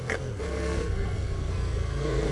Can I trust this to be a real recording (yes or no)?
no